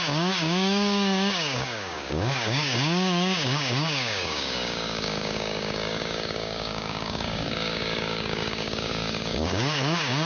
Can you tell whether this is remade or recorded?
remade